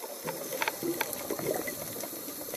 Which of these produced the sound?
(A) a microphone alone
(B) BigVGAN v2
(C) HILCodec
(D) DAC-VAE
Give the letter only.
A